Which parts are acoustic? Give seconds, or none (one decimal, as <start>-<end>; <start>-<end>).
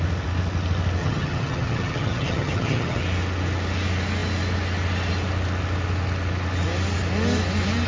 0.0-1.0; 3.0-7.9